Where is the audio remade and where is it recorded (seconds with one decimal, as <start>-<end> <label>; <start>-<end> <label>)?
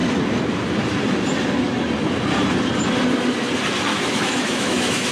0.0-3.9 recorded; 3.9-5.1 remade